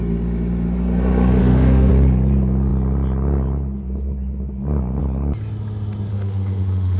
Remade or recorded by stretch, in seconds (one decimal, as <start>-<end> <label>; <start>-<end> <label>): 0.0-1.4 recorded; 1.4-1.9 remade; 1.9-6.1 recorded; 6.1-7.0 remade